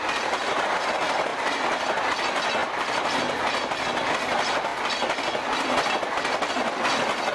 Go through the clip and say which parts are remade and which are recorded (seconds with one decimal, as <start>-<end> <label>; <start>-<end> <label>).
0.0-2.6 recorded; 2.6-3.2 remade; 3.2-7.3 recorded